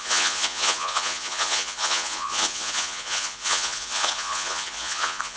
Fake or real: fake